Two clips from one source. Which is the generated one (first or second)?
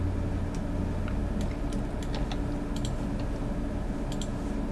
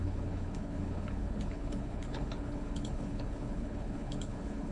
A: second